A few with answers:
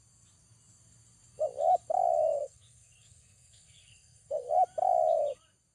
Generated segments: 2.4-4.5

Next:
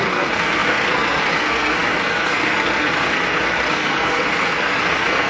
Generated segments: 0.0-5.3

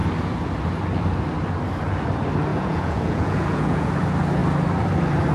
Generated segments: 2.5-3.9

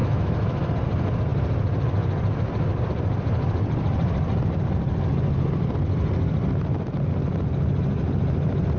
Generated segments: 0.0-0.7

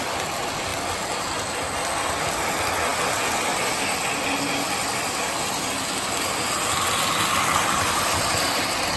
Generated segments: none